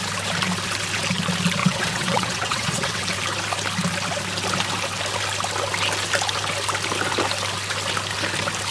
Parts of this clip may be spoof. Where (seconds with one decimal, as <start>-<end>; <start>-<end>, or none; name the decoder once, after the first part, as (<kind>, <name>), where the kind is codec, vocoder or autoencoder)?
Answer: 1.6-3.0 (vocoder, WaveNeXt)